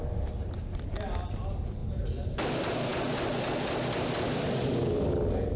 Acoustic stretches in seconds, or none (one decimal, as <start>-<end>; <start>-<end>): 0.0-5.6